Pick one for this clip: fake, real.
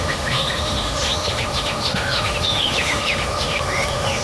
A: fake